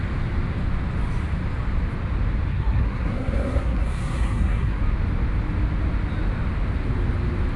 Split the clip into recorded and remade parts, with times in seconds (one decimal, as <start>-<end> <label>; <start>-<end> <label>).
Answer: 0.0-2.5 recorded; 2.5-4.8 remade; 4.8-7.6 recorded